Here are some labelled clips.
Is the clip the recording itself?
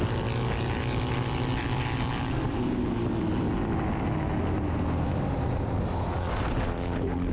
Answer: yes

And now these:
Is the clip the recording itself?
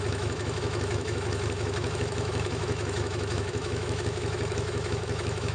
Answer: no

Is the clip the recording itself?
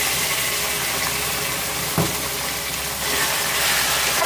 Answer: yes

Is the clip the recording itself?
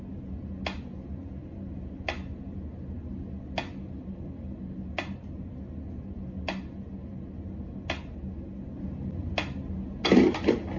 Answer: yes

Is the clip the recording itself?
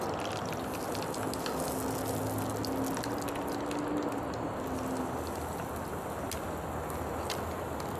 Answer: yes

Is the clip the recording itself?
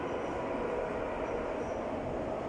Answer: yes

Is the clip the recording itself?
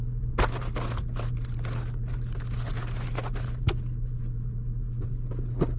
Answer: yes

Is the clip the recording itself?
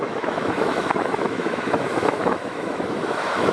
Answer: no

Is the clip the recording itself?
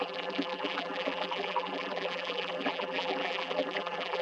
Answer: no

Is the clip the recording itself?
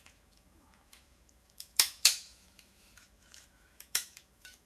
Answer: no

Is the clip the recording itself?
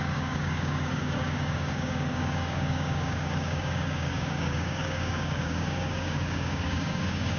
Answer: no